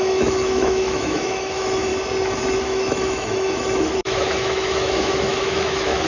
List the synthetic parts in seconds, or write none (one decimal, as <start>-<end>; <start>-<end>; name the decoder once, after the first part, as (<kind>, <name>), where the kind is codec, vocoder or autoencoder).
0.0-1.9 (autoencoder, DAC-VAE); 2.6-6.1